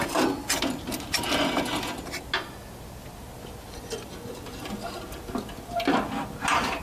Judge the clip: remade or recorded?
recorded